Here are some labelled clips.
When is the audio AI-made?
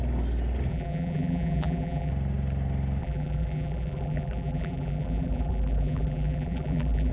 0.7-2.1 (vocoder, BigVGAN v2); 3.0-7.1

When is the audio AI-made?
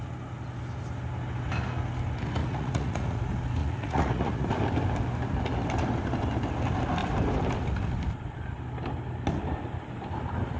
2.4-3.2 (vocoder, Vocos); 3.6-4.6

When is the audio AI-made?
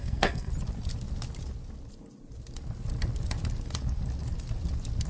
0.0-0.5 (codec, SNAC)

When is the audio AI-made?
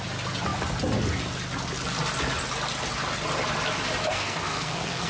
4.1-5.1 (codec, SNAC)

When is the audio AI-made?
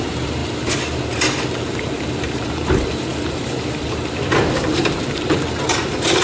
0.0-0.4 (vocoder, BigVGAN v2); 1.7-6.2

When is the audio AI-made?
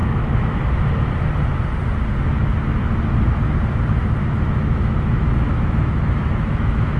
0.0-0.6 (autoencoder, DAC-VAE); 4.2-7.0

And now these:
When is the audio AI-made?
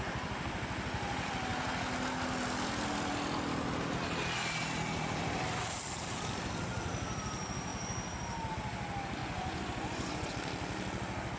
9.2-10.3 (vocoder, Vocos)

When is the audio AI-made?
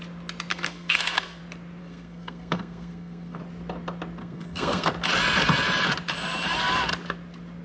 0.5-1.4 (codec, SNAC); 1.8-3.4; 4.2-4.9